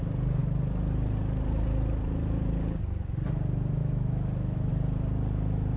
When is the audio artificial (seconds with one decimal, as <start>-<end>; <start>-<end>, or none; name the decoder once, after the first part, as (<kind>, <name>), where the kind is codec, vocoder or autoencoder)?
3.8-4.7 (autoencoder, DAC-VAE)